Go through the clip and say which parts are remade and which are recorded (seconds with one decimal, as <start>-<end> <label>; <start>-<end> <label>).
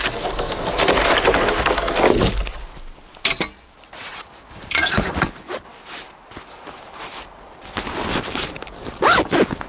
0.0-9.7 recorded